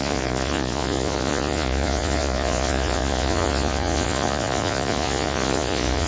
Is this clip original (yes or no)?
no